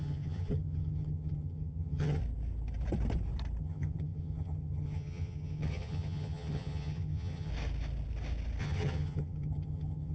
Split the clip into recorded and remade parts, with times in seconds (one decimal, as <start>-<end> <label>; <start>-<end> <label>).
0.0-2.2 remade; 2.2-3.6 recorded; 3.6-7.5 remade; 7.5-8.6 recorded; 8.6-10.1 remade